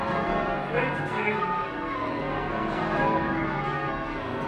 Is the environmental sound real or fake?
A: fake